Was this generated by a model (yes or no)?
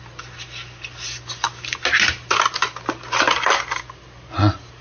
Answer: no